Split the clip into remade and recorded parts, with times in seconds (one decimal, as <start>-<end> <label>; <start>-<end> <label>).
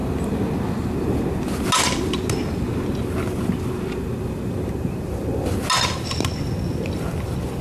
0.0-7.6 recorded